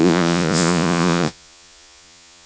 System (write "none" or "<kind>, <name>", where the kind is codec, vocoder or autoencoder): vocoder, Vocos